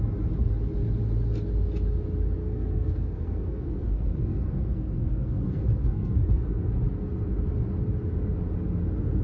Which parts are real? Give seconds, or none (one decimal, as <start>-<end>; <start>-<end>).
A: 0.0-2.4; 6.8-9.2